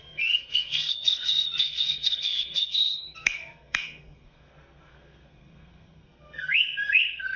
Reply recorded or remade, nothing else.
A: remade